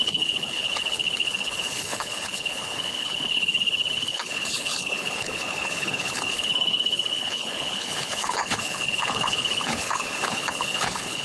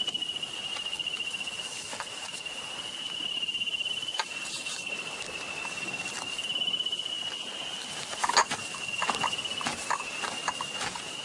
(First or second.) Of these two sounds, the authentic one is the second